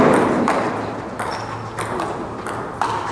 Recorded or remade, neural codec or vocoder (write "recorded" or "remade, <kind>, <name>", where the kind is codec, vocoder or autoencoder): recorded